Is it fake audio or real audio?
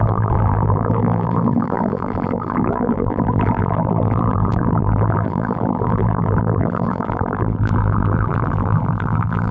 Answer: fake